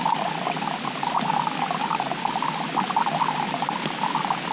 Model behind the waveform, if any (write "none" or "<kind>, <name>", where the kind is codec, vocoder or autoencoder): none